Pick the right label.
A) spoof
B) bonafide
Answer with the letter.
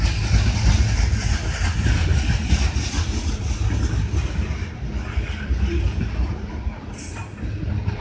B